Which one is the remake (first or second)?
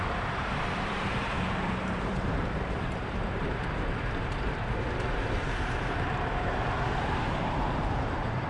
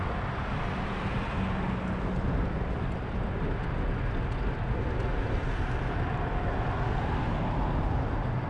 first